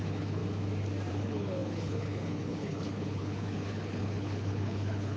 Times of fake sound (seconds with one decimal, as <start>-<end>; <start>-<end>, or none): 0.0-0.4; 1.1-5.2